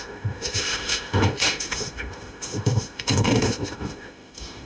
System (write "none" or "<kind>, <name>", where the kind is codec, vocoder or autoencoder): autoencoder, DAC-VAE